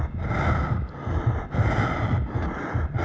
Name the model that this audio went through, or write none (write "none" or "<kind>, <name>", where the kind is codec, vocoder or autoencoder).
none